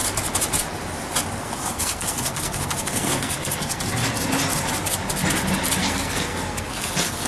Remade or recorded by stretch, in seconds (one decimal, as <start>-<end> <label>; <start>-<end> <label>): 0.0-1.4 recorded; 1.4-3.8 remade; 3.8-5.8 recorded; 5.8-7.3 remade